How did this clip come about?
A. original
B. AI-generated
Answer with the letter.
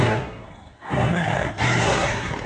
B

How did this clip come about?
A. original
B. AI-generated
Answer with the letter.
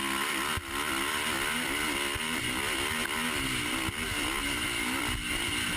A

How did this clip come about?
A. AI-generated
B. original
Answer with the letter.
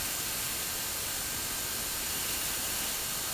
B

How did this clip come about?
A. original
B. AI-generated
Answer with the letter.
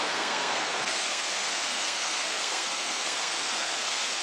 B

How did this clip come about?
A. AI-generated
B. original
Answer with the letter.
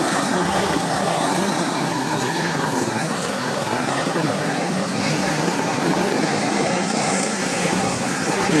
A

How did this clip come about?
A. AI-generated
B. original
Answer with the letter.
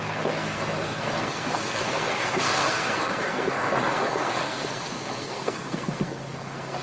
A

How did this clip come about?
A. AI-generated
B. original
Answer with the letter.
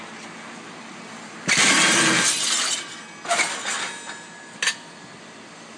B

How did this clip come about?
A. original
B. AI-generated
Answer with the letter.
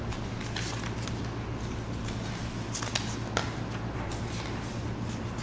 A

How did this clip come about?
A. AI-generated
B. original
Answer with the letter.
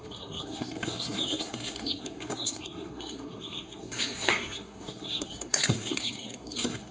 A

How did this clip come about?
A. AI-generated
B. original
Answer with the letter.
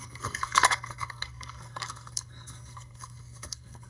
A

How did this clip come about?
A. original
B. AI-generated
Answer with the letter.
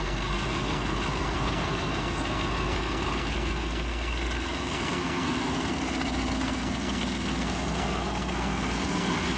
B